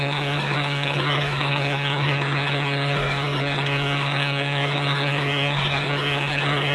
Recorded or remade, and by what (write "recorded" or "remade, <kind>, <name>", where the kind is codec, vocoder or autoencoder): remade, codec, SNAC